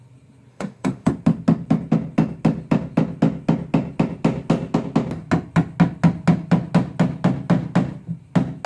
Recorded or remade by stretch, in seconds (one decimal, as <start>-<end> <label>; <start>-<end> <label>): 0.0-0.5 recorded; 0.5-1.1 remade; 1.1-8.7 recorded